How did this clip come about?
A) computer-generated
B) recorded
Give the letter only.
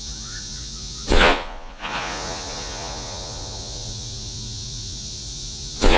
A